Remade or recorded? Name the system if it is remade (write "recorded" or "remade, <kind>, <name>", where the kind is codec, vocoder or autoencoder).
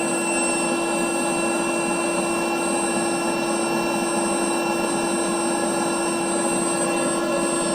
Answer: recorded